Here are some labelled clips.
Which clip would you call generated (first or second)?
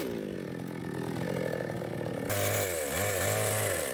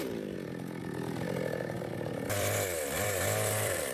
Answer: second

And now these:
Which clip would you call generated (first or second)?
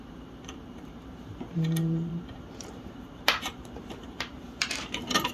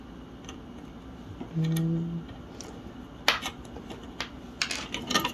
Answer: first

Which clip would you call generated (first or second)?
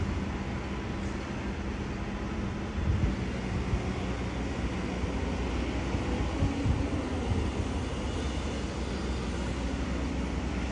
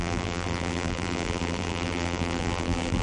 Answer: second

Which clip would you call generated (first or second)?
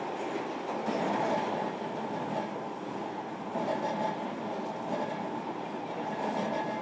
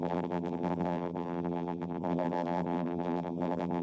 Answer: second